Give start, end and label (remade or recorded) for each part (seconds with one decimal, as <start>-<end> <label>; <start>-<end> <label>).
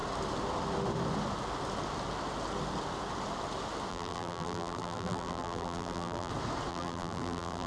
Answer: 0.0-3.9 recorded; 3.9-6.3 remade; 6.3-6.7 recorded; 6.7-7.7 remade